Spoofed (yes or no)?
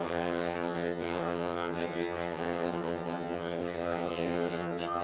yes